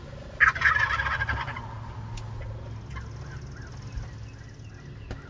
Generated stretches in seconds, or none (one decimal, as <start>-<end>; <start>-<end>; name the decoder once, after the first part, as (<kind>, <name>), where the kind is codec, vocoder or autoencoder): none